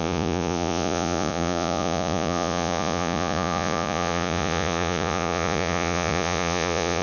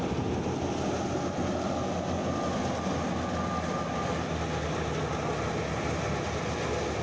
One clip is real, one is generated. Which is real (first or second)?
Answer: second